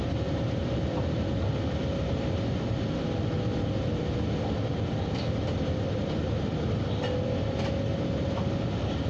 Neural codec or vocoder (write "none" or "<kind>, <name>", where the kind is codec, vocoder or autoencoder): none